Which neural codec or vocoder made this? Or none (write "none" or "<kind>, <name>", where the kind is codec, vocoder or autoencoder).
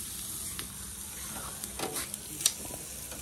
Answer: none